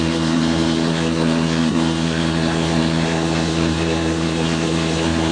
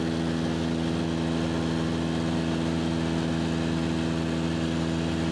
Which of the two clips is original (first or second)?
second